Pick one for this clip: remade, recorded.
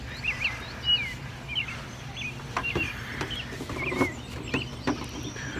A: recorded